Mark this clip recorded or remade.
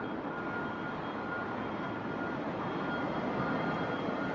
recorded